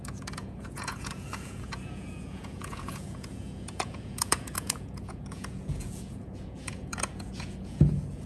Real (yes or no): no